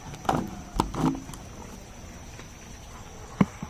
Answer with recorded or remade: recorded